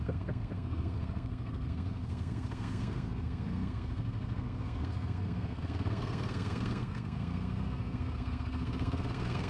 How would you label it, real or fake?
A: fake